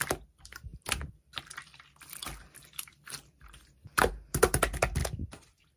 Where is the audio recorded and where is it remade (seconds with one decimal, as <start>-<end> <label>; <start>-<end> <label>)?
0.0-5.8 recorded